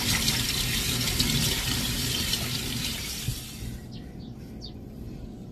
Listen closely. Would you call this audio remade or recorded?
recorded